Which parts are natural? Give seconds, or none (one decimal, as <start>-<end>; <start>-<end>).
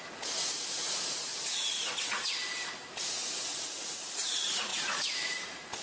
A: 1.3-2.0; 2.4-3.0